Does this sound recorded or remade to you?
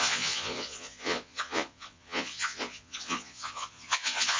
remade